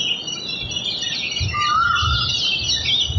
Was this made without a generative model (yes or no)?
yes